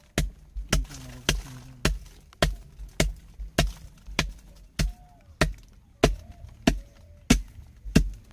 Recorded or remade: recorded